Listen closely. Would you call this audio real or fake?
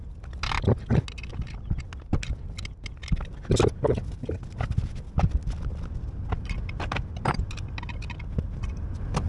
real